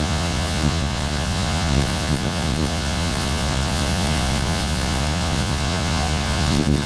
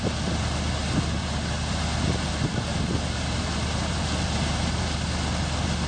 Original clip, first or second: second